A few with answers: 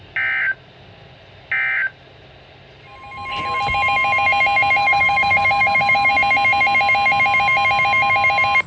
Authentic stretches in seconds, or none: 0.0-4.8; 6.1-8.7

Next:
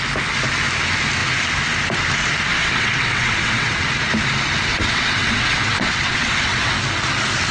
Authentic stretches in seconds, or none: 0.0-2.5; 3.8-4.7; 6.8-7.5

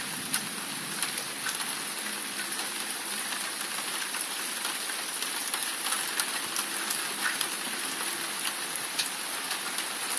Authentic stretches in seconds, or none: 0.0-10.2

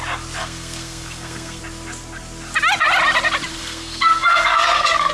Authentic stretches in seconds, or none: 0.0-0.4; 1.6-3.5

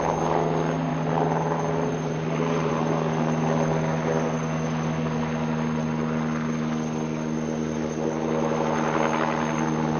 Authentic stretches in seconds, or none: 0.0-0.9; 2.7-10.0

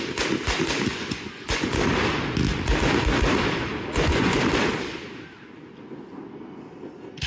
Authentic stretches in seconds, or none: 0.0-0.9; 1.7-3.7; 4.4-7.3

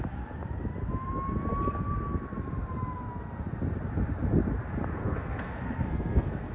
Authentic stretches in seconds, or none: 0.0-5.0

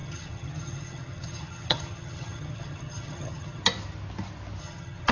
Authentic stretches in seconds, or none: 3.6-4.6